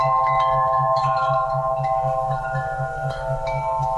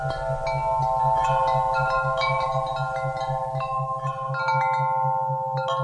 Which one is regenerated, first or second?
first